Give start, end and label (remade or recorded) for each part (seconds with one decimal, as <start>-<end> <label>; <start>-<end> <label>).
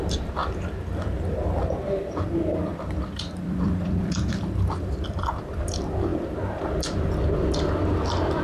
0.0-8.4 remade